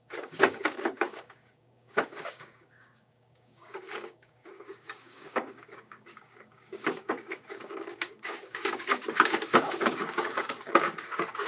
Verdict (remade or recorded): remade